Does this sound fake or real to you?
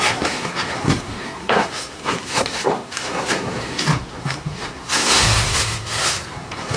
fake